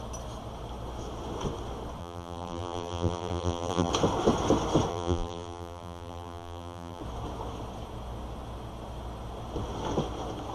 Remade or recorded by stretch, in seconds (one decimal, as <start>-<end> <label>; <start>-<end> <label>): 0.0-2.0 recorded; 2.0-3.9 remade; 3.9-4.9 recorded; 4.9-7.0 remade; 7.0-10.5 recorded